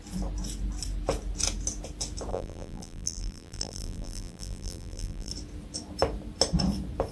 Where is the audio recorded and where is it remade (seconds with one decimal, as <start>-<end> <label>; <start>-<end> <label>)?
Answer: 0.0-2.3 recorded; 2.3-5.3 remade; 5.3-7.1 recorded